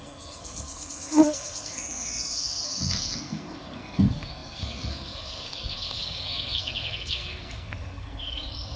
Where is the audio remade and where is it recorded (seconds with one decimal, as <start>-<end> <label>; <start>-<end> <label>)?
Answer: 0.0-8.8 remade